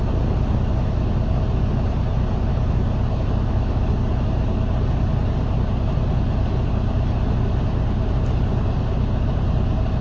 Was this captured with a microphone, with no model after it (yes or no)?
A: yes